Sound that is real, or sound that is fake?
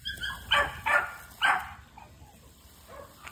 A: real